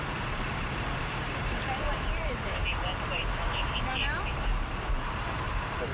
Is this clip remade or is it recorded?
remade